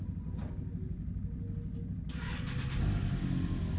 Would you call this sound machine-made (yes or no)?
no